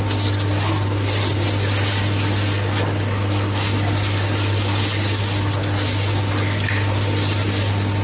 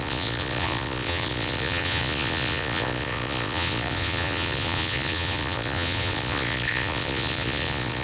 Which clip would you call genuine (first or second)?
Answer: first